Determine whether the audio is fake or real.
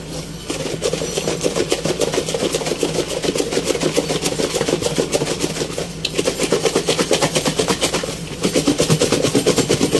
real